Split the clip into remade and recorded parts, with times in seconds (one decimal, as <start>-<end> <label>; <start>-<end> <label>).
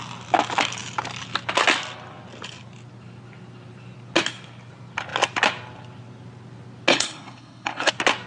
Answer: 0.0-6.9 recorded; 6.9-7.9 remade; 7.9-8.3 recorded